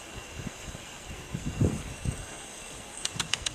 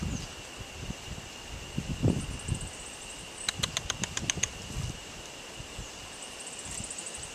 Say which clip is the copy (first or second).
first